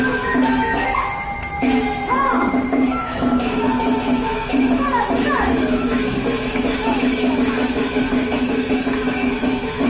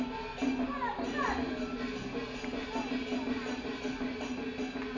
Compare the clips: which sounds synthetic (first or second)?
first